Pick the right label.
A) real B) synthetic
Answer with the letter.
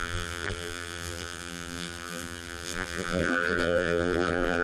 B